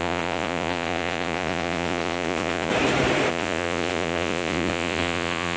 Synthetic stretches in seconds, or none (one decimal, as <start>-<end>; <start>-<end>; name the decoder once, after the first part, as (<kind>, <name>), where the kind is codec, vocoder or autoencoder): 0.0-2.7 (vocoder, Vocos); 3.3-5.6